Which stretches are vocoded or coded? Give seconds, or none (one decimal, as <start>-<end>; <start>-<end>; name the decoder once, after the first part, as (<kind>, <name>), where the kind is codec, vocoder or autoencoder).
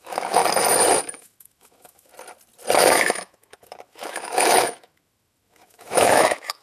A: 0.0-0.4 (autoencoder, DAC-VAE); 1.0-2.1; 2.8-6.6